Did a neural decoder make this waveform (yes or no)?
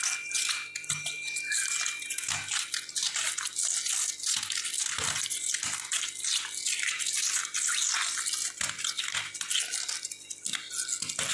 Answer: no